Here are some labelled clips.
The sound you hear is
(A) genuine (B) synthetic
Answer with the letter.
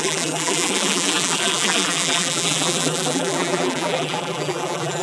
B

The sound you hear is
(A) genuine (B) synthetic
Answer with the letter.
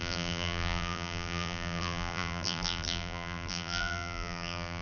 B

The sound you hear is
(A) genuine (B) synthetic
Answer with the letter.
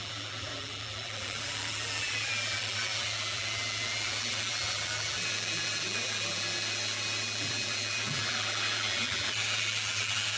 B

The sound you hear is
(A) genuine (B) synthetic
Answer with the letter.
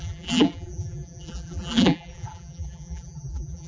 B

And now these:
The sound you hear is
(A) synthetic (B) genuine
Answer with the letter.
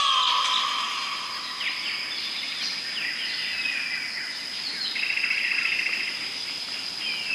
B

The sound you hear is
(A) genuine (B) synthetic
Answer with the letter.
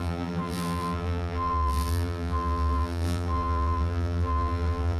B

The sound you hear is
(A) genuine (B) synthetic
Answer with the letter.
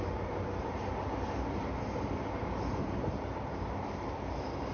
B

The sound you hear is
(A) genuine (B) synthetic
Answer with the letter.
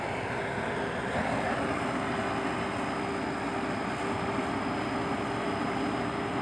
A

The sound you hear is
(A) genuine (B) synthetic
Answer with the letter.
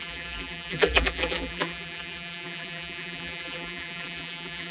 B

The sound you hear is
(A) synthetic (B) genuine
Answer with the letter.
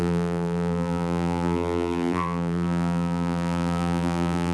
A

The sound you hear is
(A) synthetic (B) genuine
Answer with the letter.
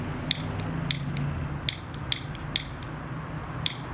B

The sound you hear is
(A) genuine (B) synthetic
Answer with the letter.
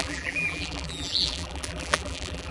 B